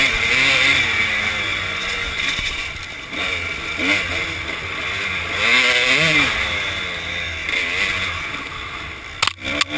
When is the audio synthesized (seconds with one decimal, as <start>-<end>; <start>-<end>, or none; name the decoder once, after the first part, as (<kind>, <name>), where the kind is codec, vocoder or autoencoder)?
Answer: 1.5-2.7 (vocoder, Vocos)